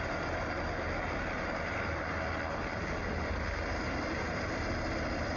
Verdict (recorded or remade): recorded